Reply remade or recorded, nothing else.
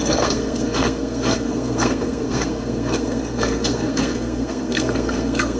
remade